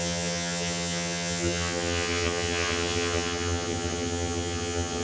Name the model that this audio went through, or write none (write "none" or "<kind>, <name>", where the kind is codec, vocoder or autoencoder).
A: vocoder, HiFi-GAN